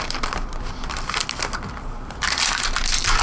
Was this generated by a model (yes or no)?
no